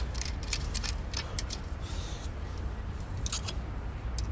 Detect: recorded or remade recorded